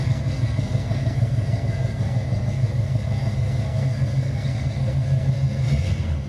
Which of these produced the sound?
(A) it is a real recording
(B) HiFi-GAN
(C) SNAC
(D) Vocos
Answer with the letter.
C